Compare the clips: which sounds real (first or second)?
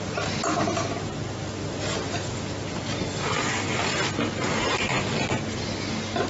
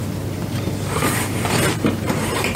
first